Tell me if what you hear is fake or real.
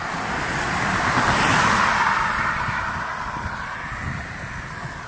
real